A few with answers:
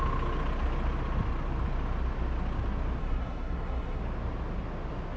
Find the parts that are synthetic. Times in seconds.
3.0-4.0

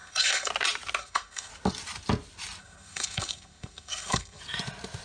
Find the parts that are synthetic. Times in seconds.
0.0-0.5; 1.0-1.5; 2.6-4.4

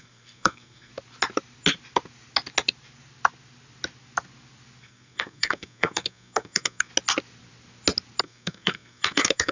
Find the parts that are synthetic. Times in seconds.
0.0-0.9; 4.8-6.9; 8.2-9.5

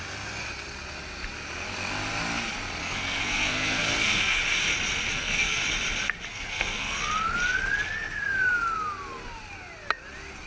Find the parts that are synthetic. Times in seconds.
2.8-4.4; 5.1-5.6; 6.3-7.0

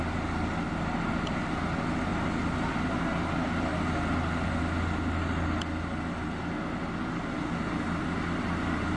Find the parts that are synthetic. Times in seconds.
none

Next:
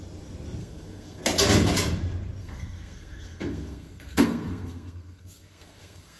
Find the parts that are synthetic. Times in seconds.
0.6-1.2; 2.4-6.2

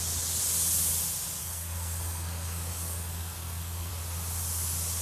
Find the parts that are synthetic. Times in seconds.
1.4-3.9